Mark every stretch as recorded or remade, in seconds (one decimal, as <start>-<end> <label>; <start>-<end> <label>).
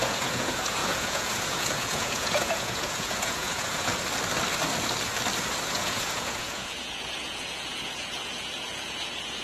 0.0-3.9 remade; 3.9-5.7 recorded; 5.7-9.4 remade